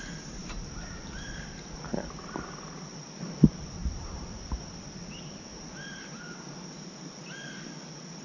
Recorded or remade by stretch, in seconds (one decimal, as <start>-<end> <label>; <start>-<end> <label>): 0.0-0.4 recorded; 0.4-3.0 remade; 3.0-3.8 recorded; 3.8-4.4 remade; 4.4-5.5 recorded; 5.5-6.1 remade; 6.1-8.2 recorded